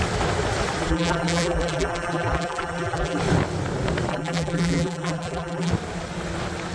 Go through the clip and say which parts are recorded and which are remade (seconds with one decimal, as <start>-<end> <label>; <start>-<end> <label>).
0.0-0.9 recorded; 0.9-3.2 remade; 3.2-4.1 recorded; 4.1-5.7 remade; 5.7-6.7 recorded